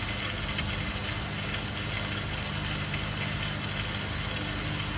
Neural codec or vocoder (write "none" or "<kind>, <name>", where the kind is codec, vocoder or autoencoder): none